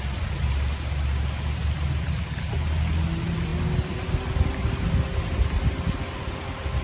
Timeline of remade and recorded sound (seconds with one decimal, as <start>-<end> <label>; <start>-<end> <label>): 0.0-6.8 recorded